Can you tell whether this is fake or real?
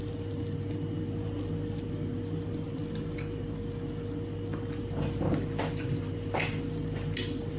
real